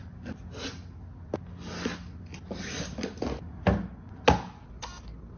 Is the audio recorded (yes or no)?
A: yes